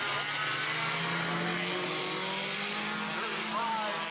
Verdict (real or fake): real